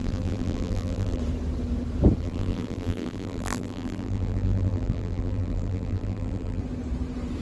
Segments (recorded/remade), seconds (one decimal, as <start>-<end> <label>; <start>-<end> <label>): 0.0-1.2 remade; 1.2-2.2 recorded; 2.2-6.6 remade; 6.6-7.4 recorded